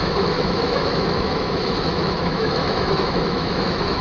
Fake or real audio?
fake